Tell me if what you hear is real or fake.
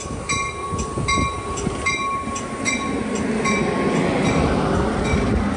real